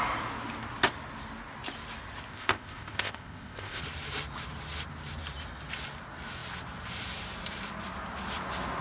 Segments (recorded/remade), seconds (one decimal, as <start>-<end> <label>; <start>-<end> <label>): 0.0-2.3 recorded; 2.3-3.8 remade; 3.8-8.8 recorded

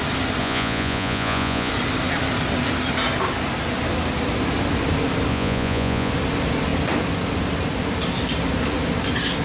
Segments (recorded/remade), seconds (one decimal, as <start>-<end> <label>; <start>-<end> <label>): 0.0-0.4 recorded; 0.4-1.7 remade; 1.7-5.3 recorded; 5.3-6.1 remade; 6.1-9.4 recorded